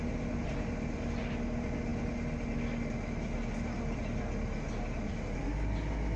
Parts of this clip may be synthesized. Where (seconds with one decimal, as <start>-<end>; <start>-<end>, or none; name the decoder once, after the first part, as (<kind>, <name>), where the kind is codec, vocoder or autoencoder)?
none